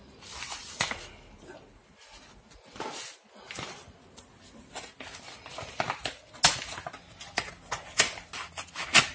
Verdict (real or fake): real